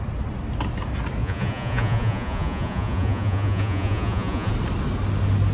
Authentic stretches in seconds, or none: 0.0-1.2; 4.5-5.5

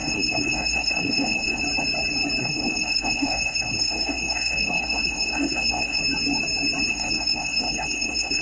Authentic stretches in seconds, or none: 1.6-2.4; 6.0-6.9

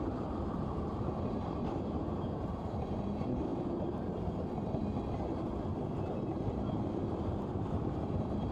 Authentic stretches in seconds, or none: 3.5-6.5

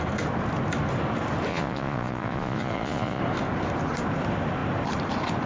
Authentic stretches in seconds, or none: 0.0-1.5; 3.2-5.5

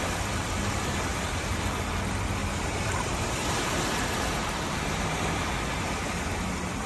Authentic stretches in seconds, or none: 0.0-1.1; 1.6-2.4; 5.5-6.9

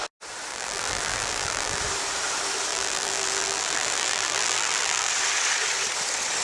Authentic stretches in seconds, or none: 0.0-0.5; 1.8-2.7; 5.1-6.4

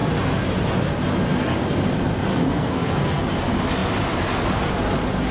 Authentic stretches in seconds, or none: 0.0-2.3; 3.3-5.3

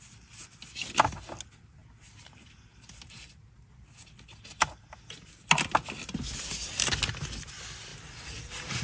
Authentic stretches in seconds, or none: 0.0-8.8